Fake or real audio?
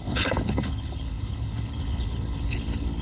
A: fake